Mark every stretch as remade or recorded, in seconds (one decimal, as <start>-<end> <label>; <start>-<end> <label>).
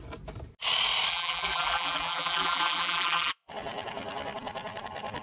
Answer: 0.0-1.1 recorded; 1.1-3.5 remade; 3.5-5.2 recorded